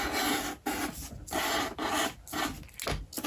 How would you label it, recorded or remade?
recorded